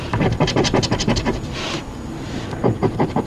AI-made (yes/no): yes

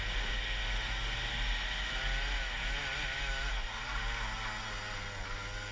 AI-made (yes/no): no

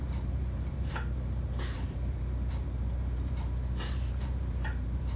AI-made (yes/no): yes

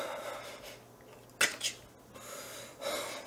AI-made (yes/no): no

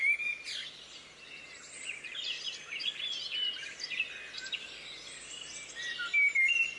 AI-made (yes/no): no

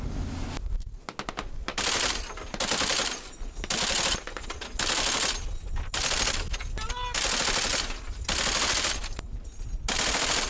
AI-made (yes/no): no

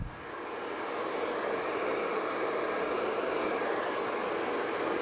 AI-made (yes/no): no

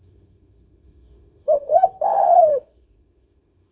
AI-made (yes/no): yes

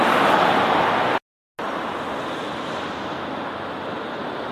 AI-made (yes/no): no